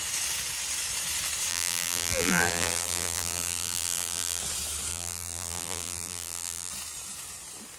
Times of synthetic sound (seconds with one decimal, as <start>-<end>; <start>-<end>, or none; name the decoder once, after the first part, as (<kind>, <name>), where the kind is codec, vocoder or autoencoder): 1.5-4.4 (vocoder, BigVGAN v2); 4.9-6.7